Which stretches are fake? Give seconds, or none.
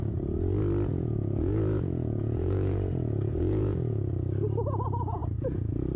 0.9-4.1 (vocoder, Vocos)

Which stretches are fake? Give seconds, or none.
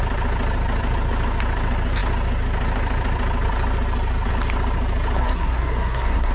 5.2-6.3 (codec, SNAC)